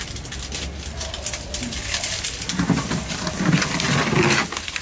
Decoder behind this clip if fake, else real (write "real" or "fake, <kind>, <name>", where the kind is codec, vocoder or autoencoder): real